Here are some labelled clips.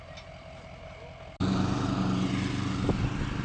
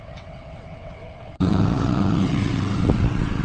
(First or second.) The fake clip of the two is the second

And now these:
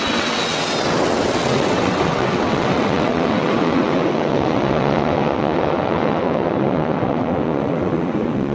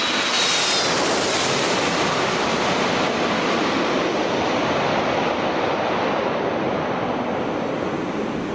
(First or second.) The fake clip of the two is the first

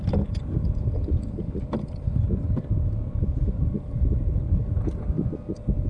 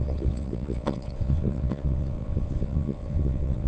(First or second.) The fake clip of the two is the second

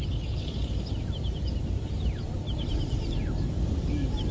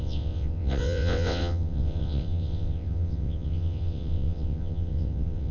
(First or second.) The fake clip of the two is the second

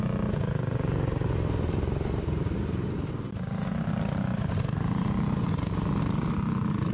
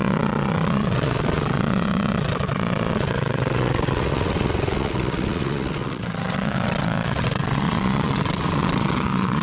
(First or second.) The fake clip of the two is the second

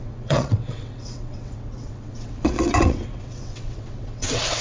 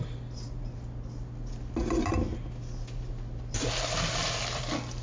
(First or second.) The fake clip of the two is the first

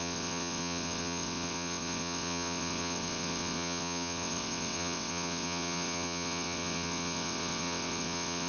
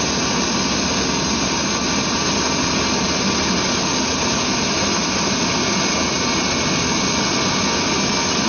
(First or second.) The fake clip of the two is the first